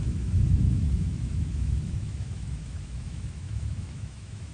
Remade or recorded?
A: remade